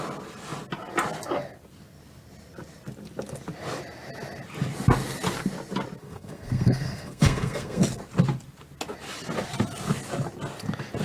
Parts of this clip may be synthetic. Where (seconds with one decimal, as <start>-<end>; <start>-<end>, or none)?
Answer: 6.0-7.8